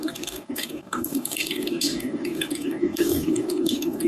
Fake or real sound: fake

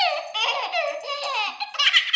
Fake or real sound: real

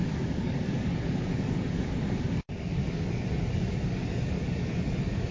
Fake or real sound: fake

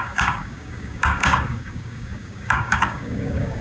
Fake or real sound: fake